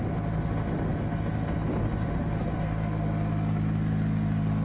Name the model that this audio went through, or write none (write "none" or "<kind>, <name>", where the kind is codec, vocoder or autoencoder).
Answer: none